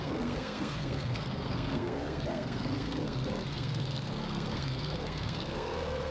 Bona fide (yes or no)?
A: no